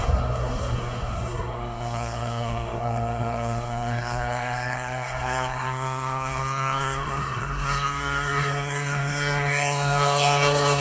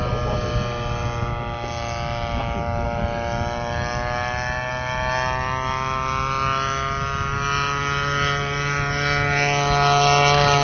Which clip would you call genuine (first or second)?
second